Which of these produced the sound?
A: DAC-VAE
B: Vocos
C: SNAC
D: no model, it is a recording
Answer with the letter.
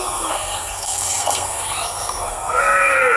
C